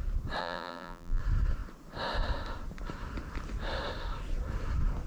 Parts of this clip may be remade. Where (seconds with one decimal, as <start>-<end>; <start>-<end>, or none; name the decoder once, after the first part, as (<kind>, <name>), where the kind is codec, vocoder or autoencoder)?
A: 0.4-1.2 (vocoder, BigVGAN v2)